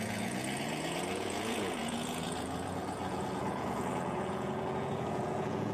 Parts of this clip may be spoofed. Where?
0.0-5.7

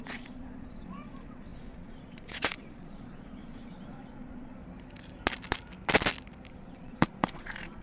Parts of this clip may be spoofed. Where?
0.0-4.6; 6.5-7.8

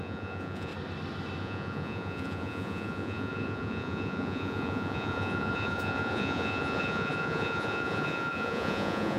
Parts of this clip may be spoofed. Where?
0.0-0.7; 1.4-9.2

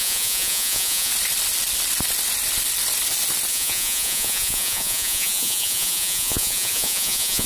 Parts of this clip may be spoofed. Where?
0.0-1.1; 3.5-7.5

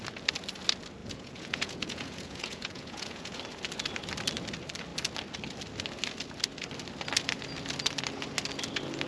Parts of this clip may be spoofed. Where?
1.0-3.4

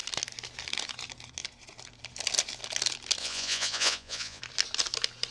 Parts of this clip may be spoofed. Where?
3.2-4.4